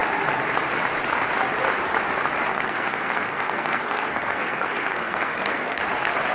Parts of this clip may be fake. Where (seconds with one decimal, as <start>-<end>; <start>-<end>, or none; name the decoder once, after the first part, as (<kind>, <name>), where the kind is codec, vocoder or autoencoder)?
2.5-5.8 (codec, SNAC)